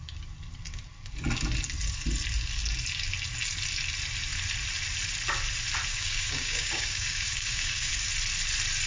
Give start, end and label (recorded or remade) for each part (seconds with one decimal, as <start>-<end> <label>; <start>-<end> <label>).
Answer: 0.0-5.9 recorded; 5.9-7.9 remade; 7.9-8.9 recorded